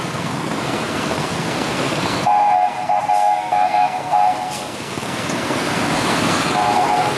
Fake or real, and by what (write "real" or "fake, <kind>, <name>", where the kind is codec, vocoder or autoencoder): fake, codec, SNAC